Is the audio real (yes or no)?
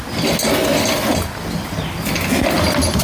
yes